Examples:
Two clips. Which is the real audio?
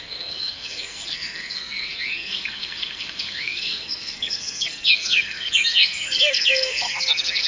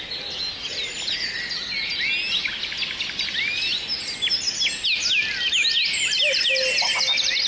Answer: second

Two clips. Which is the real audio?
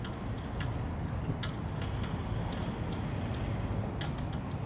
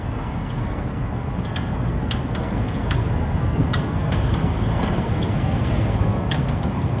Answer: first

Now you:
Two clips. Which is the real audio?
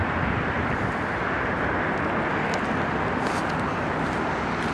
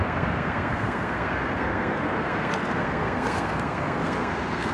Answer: first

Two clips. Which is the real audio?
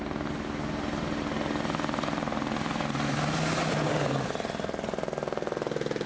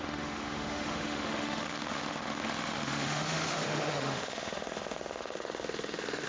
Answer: first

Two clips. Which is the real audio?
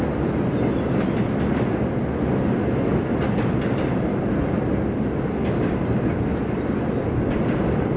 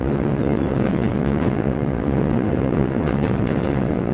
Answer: first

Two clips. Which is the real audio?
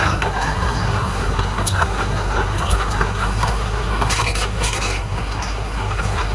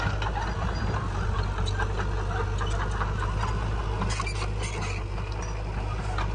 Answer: second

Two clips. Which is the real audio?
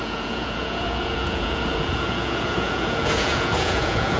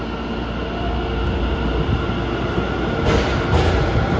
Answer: second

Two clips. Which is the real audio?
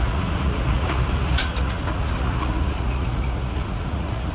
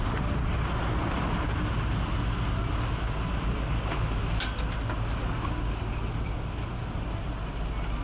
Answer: second